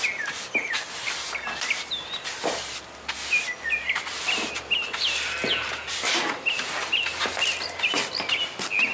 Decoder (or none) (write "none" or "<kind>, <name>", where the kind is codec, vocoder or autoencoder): none